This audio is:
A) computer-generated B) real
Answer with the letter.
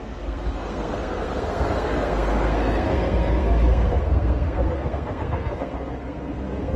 A